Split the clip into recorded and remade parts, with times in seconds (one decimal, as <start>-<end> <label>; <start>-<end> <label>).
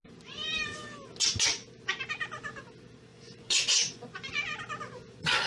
0.0-3.1 recorded; 3.1-4.6 remade; 4.6-5.5 recorded